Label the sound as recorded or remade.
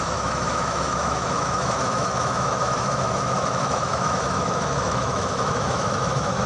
remade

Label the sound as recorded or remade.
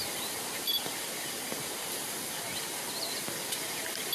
recorded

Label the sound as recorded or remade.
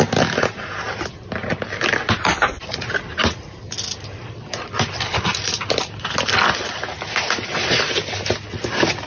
recorded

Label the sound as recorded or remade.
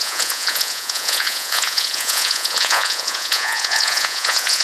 remade